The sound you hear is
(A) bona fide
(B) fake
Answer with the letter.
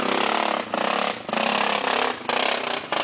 A